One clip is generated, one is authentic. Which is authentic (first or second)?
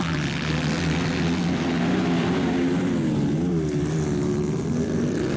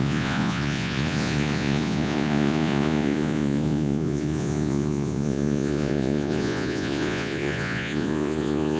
first